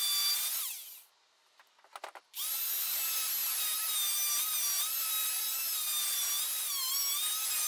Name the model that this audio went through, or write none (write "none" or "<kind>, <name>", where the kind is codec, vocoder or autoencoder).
none